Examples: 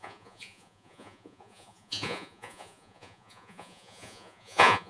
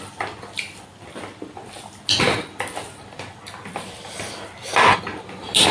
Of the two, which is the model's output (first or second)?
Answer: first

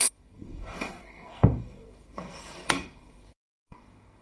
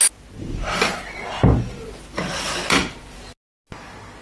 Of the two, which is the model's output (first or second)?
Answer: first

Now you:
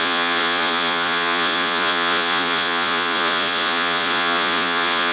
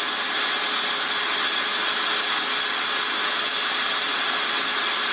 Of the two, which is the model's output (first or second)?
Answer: first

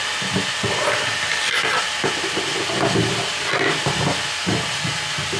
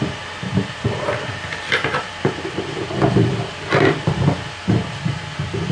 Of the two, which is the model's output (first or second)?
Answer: second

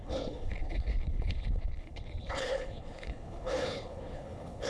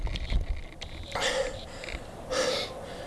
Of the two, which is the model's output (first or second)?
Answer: first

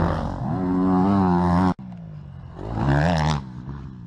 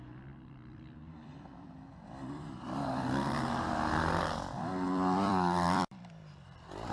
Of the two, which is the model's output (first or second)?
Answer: second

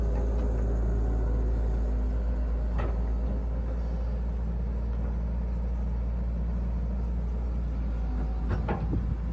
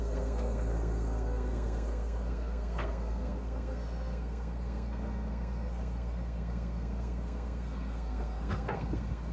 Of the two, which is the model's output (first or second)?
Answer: second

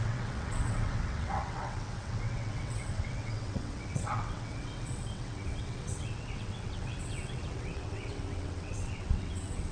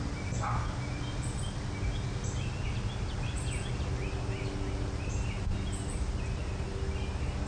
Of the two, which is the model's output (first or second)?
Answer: first